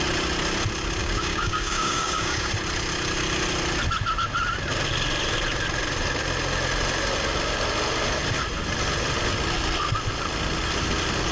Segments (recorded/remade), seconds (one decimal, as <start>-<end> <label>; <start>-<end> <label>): 0.0-1.0 recorded; 1.0-2.5 remade; 2.5-11.3 recorded